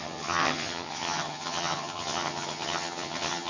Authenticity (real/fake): fake